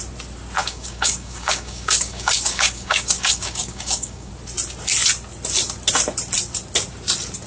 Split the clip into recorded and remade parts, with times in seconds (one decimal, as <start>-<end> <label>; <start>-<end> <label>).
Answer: 0.0-0.6 recorded; 0.6-4.3 remade; 4.3-7.5 recorded

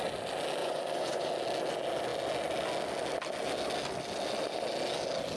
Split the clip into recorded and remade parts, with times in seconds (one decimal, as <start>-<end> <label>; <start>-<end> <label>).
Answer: 0.0-0.6 recorded; 0.6-1.3 remade; 1.3-5.4 recorded